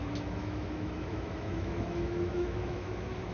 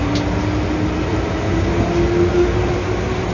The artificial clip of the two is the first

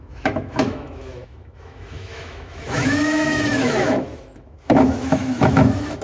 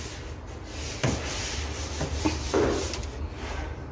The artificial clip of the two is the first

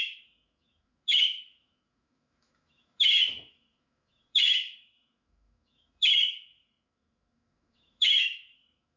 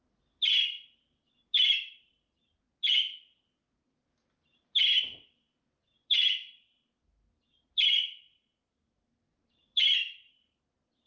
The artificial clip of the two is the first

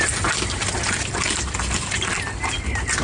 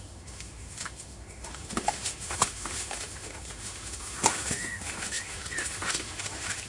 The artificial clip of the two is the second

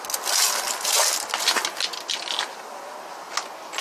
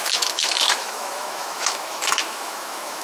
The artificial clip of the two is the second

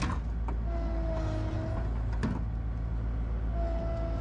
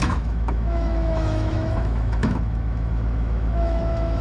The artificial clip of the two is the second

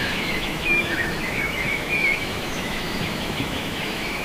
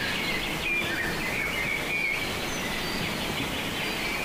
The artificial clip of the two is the first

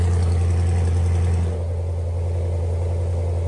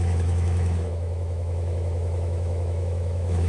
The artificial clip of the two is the second